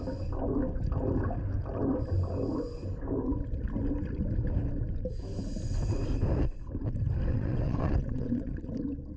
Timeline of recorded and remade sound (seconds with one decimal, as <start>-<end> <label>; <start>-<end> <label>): 0.0-7.3 recorded; 7.3-8.5 remade; 8.5-9.2 recorded